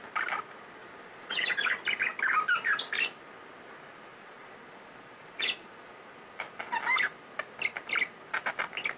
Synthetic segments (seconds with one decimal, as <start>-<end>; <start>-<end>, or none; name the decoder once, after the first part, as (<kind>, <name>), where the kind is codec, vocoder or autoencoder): 0.8-1.7 (vocoder, Vocos); 4.1-5.9